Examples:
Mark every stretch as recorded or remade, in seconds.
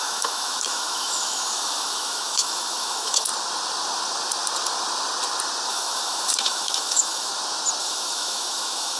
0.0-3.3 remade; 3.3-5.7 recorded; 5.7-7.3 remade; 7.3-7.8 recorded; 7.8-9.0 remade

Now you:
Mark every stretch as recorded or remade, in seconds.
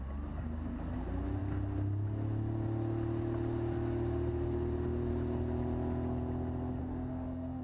0.0-6.8 recorded; 6.8-7.6 remade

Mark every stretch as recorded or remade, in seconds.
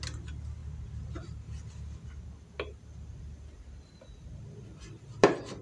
0.0-5.6 recorded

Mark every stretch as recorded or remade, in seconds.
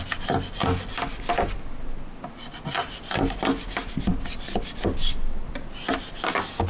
0.0-6.7 recorded